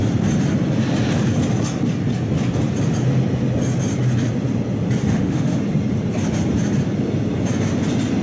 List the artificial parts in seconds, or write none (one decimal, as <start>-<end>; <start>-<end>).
5.0-5.6